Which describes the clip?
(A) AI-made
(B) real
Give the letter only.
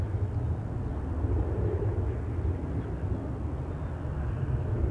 B